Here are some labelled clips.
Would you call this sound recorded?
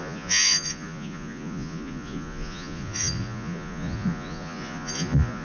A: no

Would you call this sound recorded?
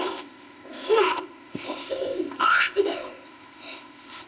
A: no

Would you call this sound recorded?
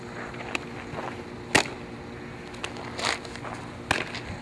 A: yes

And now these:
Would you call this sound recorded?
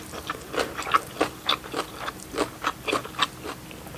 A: yes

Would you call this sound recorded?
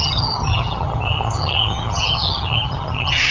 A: no